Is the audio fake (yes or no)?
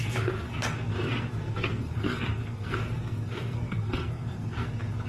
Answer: yes